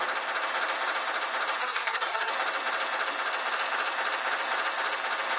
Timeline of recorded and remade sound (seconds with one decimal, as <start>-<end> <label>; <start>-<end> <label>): 0.0-1.6 recorded; 1.6-2.3 remade; 2.3-5.4 recorded